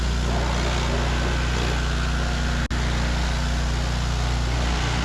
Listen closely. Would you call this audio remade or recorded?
recorded